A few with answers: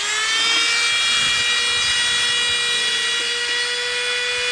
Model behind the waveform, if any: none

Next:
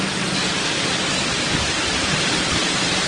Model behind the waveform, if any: none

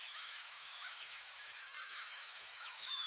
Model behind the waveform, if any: autoencoder, DAC-VAE